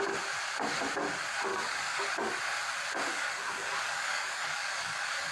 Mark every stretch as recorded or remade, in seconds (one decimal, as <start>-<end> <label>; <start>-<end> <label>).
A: 0.0-1.5 recorded; 1.5-2.4 remade; 2.4-3.1 recorded; 3.1-5.3 remade